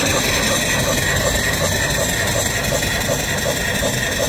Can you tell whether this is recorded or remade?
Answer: recorded